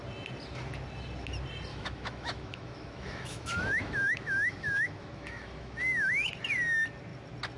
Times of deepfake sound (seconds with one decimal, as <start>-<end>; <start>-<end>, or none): 1.7-6.3